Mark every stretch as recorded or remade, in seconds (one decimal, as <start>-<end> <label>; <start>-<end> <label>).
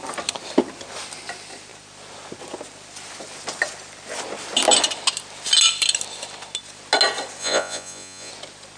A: 0.0-7.4 recorded; 7.4-8.3 remade; 8.3-8.8 recorded